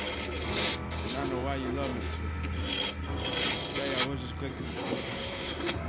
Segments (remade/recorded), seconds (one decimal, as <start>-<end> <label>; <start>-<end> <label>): 0.0-4.5 recorded; 4.5-5.9 remade

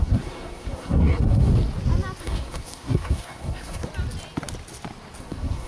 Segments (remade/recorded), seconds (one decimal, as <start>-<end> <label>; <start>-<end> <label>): 0.0-1.5 remade; 1.5-2.2 recorded; 2.2-3.9 remade; 3.9-5.2 recorded; 5.2-5.7 remade

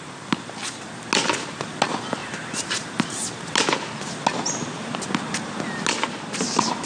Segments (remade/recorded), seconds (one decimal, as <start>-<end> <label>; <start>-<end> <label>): 0.0-6.9 recorded

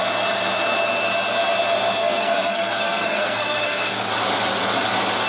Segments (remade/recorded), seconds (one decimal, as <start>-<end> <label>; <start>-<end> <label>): 0.0-2.0 recorded; 2.0-4.1 remade; 4.1-5.3 recorded

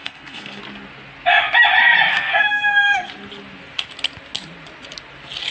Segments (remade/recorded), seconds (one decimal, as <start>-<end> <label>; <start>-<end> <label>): 0.0-0.6 remade; 0.6-2.1 recorded; 2.1-3.1 remade; 3.1-5.5 recorded